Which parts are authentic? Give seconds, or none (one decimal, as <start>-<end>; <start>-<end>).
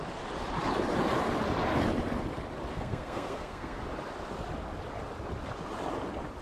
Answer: 0.0-2.7; 3.8-6.4